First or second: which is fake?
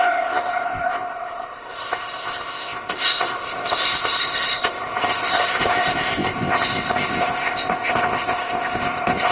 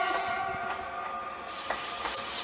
first